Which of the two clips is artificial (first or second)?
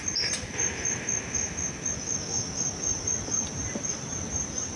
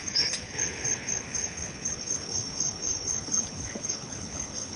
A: second